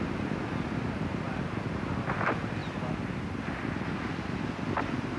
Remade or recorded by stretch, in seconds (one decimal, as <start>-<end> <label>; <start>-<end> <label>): 0.0-5.2 recorded